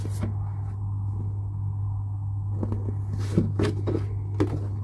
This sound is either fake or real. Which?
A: real